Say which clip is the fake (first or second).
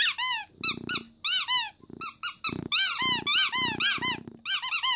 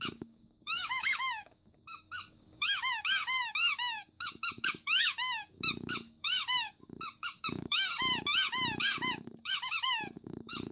second